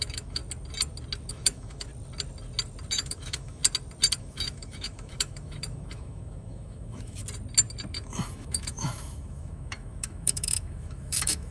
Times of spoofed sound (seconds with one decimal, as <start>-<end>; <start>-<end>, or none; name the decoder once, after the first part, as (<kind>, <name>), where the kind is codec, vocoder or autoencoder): 0.0-0.4 (autoencoder, DAC-VAE); 1.3-1.9; 2.9-3.6; 4.2-7.2; 7.9-11.5